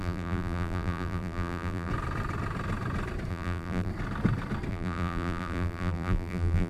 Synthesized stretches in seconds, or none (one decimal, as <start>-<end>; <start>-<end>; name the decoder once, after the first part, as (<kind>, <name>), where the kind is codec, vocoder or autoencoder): 0.0-1.9 (vocoder, BigVGAN v2); 3.3-3.9; 4.7-6.7